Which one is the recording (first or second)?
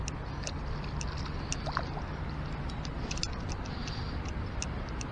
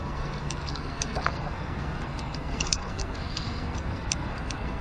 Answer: first